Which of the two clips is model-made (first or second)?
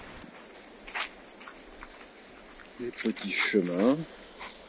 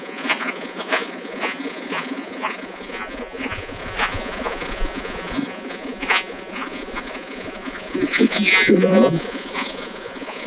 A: second